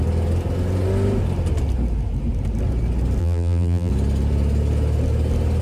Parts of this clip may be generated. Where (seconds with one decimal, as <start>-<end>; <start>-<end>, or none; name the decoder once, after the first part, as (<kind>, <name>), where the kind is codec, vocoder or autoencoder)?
3.2-3.9 (vocoder, BigVGAN v2)